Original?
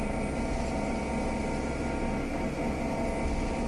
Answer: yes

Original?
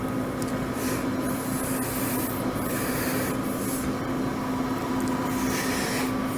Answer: yes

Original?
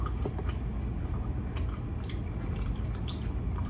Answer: yes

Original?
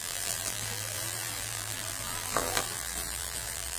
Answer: no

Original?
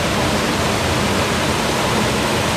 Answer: yes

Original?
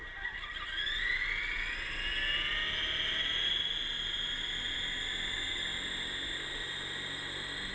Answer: yes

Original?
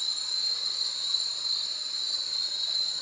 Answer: no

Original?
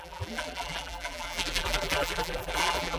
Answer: no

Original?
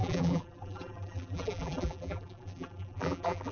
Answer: no